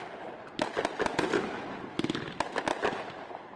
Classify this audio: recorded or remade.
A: recorded